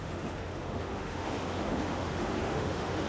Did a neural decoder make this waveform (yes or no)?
yes